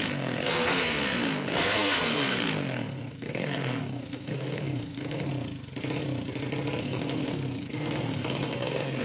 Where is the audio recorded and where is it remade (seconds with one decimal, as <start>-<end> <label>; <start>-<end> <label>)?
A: 0.0-5.3 remade; 5.3-6.8 recorded; 6.8-9.0 remade